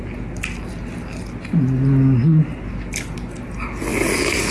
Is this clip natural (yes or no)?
yes